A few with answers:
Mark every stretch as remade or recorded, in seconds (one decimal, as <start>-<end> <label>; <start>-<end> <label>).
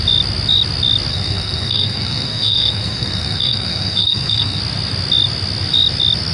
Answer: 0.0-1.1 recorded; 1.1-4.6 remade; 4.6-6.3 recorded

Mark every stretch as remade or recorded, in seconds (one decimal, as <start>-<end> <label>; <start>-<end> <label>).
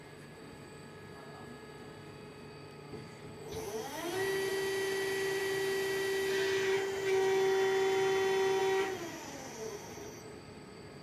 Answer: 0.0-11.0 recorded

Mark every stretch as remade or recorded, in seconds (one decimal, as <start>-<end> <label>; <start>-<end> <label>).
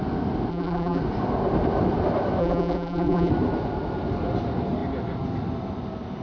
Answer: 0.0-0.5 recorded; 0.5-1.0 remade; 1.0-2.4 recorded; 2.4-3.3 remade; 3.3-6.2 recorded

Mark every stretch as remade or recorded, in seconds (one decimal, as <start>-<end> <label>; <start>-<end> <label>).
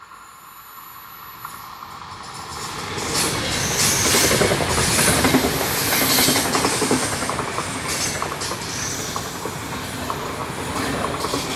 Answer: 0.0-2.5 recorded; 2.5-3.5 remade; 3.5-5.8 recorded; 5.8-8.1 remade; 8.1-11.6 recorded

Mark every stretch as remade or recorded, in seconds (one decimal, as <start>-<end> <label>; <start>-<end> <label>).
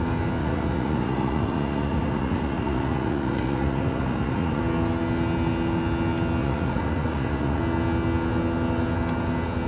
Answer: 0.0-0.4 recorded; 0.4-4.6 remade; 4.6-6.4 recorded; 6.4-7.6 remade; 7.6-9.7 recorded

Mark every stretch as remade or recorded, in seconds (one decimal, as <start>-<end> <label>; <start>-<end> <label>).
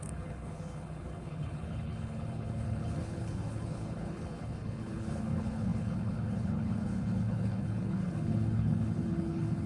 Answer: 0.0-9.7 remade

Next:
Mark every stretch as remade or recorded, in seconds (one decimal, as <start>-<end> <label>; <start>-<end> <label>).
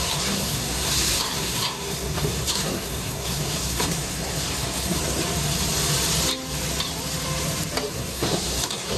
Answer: 0.0-5.0 remade; 5.0-7.9 recorded; 7.9-9.0 remade